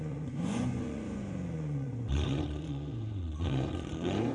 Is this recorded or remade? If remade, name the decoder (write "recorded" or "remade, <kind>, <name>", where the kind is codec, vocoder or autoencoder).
remade, vocoder, Vocos